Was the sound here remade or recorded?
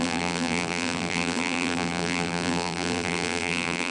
remade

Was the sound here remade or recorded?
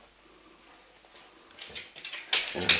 recorded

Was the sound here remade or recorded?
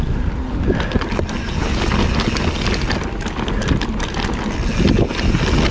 recorded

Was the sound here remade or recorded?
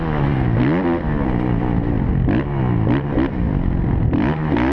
recorded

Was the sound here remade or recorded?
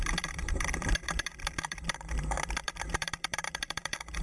remade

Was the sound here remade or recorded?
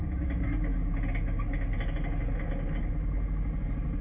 recorded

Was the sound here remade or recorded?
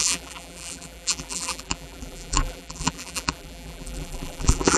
remade